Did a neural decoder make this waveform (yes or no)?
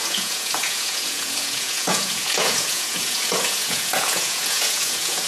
yes